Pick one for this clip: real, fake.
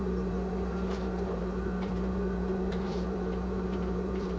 fake